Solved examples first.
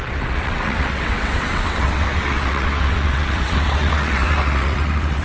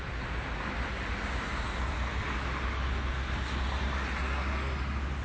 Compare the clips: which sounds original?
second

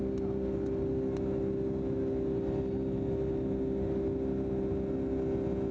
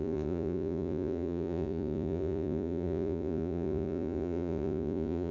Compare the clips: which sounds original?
first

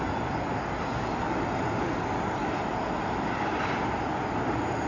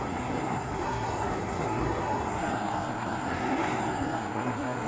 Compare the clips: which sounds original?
first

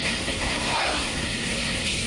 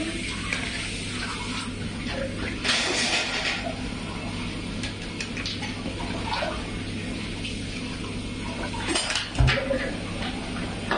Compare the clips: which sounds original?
second